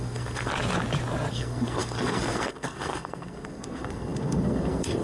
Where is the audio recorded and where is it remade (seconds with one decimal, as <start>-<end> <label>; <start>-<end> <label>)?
0.0-0.5 remade; 0.5-1.3 recorded; 1.3-5.0 remade